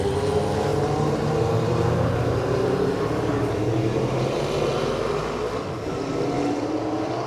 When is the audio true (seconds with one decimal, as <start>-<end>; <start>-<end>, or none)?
0.0-0.7; 4.4-7.3